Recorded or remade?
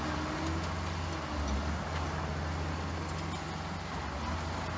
recorded